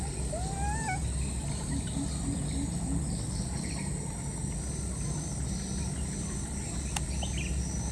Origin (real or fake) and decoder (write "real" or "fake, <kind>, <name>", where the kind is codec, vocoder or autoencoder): real